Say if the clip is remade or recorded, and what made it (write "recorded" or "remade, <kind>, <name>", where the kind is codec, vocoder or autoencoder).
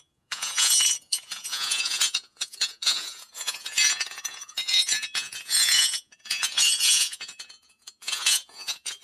remade, vocoder, Vocos